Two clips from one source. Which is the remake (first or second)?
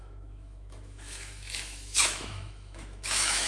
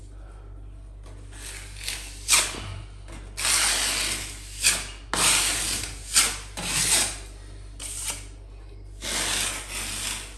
first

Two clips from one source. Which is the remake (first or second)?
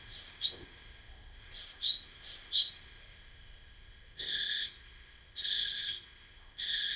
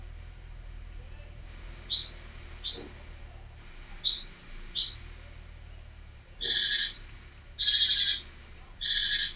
first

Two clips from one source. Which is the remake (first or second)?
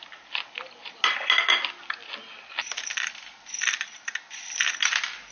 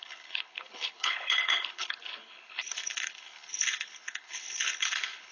second